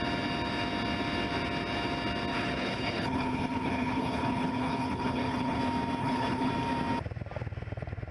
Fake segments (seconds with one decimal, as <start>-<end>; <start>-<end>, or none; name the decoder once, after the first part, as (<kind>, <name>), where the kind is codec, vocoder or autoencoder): 2.3-5.6 (codec, HILCodec); 6.0-6.5